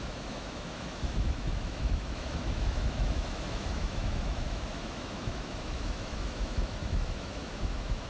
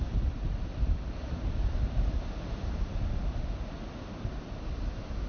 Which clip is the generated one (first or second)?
first